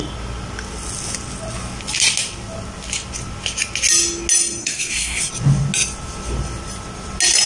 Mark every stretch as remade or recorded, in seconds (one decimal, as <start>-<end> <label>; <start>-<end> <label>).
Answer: 0.0-4.6 recorded; 4.6-5.3 remade; 5.3-7.5 recorded